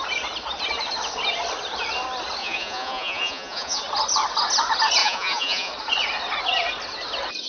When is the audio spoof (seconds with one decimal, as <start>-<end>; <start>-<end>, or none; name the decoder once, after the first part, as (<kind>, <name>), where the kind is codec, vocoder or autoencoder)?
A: 2.4-3.8 (vocoder, Vocos); 5.0-5.7